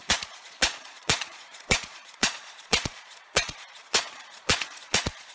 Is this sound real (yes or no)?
no